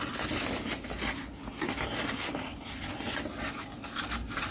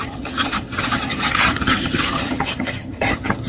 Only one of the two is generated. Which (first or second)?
second